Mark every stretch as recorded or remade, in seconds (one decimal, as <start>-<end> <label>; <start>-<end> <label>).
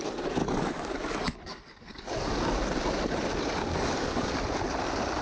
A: 0.0-0.4 recorded; 0.4-2.5 remade; 2.5-3.7 recorded; 3.7-4.3 remade; 4.3-5.2 recorded